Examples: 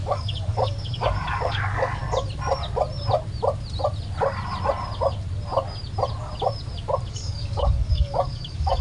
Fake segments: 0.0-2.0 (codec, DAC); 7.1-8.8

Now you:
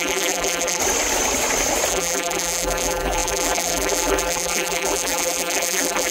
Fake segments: 0.0-0.8 (vocoder, BigVGAN v2); 1.9-6.1

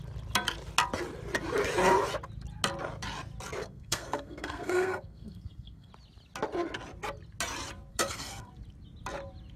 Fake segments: 3.6-5.9 (codec, SNAC); 7.9-8.5